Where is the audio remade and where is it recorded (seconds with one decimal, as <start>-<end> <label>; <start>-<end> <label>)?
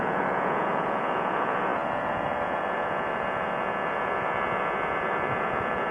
0.0-5.9 remade